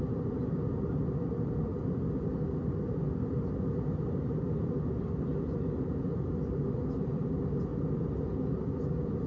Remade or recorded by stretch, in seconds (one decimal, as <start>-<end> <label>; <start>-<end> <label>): 0.0-9.3 recorded